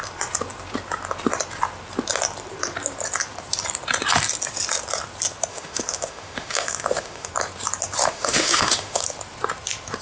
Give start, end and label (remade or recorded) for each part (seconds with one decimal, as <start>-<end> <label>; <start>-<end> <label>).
0.0-5.5 recorded; 5.5-7.3 remade; 7.3-8.0 recorded; 8.0-9.0 remade; 9.0-10.0 recorded